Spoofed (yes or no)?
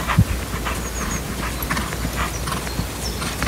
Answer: no